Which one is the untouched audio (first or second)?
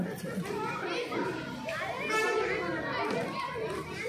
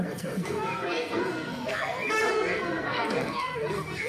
first